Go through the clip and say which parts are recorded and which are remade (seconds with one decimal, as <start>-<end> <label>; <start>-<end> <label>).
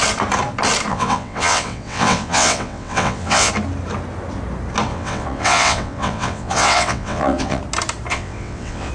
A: 0.0-0.9 recorded; 0.9-3.5 remade; 3.5-4.9 recorded; 4.9-7.6 remade; 7.6-8.1 recorded; 8.1-8.9 remade